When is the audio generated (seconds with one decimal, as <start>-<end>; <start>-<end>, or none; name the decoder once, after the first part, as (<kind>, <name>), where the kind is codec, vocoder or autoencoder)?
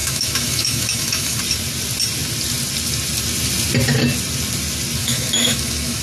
0.0-1.4 (autoencoder, DAC-VAE); 5.0-6.0